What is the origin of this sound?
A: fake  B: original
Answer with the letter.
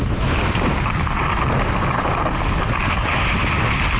B